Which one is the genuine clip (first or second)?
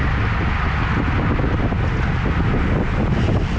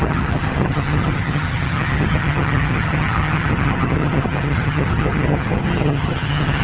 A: first